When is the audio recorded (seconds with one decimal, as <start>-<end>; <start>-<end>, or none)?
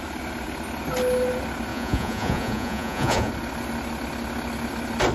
0.0-1.7; 3.3-5.1